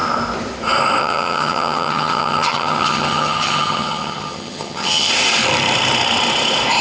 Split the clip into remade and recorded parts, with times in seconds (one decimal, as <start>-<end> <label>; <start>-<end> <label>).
0.0-1.0 recorded; 1.0-5.1 remade; 5.1-6.8 recorded